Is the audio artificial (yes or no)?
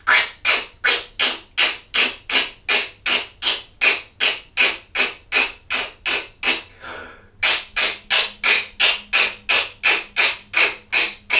no